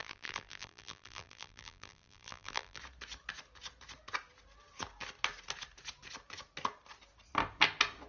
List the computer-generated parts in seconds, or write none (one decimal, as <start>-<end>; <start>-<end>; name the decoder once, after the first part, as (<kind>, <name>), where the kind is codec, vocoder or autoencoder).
0.0-2.8 (vocoder, BigVGAN v2)